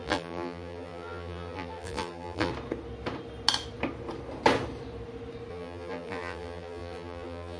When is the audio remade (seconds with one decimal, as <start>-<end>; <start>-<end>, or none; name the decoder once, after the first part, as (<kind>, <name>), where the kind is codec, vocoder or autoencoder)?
0.0-2.5 (vocoder, BigVGAN v2); 5.5-7.6